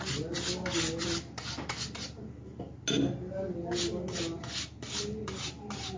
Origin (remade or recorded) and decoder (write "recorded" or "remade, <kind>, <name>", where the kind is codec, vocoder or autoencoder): recorded